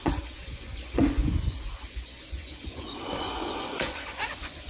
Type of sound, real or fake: fake